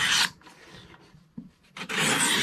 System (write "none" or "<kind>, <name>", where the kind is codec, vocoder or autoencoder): none